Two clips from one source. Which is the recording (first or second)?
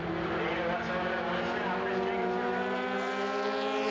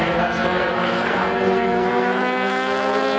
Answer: first